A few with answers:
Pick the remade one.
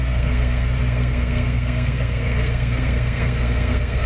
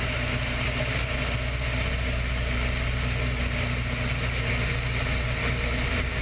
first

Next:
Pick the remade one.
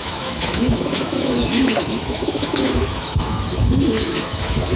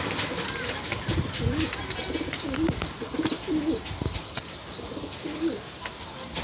first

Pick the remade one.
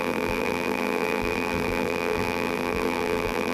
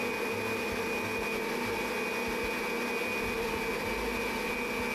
first